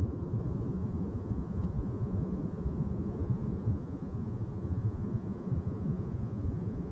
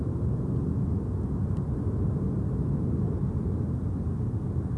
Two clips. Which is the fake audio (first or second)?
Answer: first